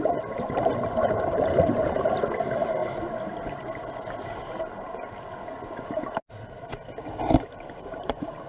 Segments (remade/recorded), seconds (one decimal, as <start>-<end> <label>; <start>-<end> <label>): 0.0-2.8 remade; 2.8-7.2 recorded; 7.2-8.5 remade